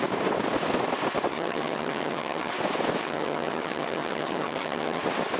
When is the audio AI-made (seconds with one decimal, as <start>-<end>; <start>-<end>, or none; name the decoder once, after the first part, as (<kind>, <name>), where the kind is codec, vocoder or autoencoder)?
1.3-2.5 (vocoder, HiFi-GAN); 3.0-5.0